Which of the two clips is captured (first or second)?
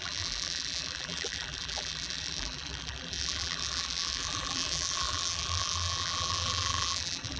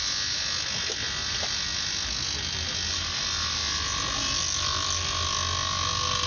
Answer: second